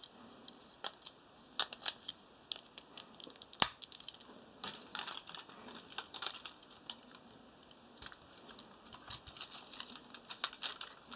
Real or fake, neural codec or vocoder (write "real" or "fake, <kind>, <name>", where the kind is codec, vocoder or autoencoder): real